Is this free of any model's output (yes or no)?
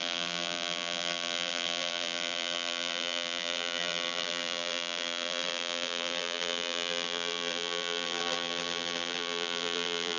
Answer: no